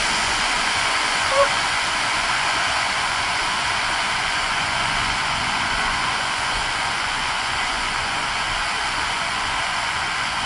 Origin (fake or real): fake